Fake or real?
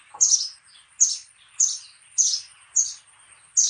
real